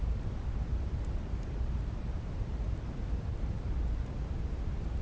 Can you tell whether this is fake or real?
fake